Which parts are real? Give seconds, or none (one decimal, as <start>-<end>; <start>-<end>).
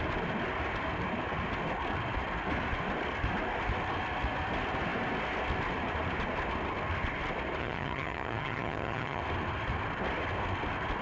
0.0-7.6; 9.2-11.0